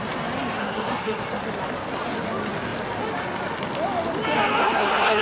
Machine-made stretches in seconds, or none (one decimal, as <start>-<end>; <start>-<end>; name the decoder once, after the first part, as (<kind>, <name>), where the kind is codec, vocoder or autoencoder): 0.6-1.4 (codec, SNAC); 4.6-5.2